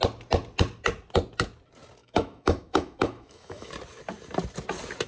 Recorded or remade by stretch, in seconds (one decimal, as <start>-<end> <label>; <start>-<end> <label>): 0.0-2.0 recorded; 2.0-3.7 remade; 3.7-5.1 recorded